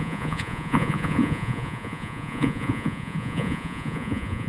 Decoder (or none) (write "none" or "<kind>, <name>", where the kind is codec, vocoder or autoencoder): vocoder, Vocos